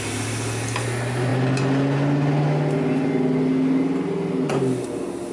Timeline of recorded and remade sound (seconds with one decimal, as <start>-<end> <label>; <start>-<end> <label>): 0.0-5.3 recorded